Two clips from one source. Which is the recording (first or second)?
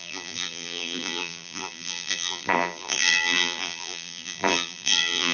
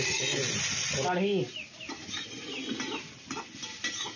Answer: second